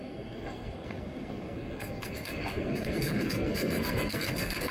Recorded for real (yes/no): no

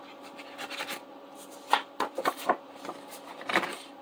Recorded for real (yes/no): yes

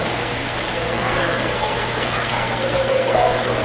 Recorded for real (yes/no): no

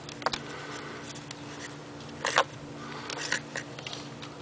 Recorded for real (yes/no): yes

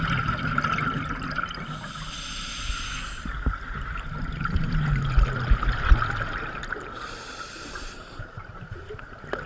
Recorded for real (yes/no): yes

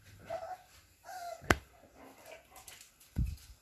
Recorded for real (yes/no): yes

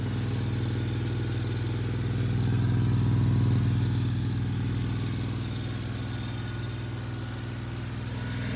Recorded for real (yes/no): yes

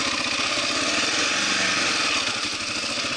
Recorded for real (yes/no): yes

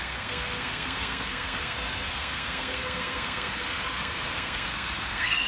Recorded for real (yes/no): no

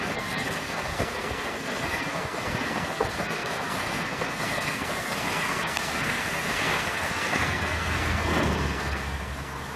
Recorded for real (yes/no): no